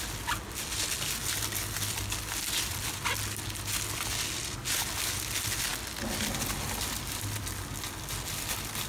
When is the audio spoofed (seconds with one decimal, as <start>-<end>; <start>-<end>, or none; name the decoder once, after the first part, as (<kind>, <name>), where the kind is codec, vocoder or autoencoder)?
none